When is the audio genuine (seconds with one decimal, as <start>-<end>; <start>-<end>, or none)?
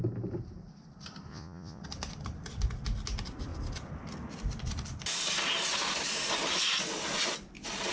0.0-1.3; 1.8-7.9